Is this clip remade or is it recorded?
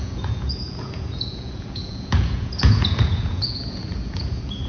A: remade